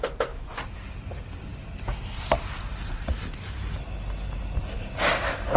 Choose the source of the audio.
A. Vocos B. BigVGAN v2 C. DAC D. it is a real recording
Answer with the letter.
D